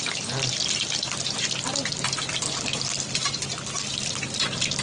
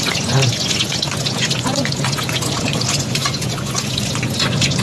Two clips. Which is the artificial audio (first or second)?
second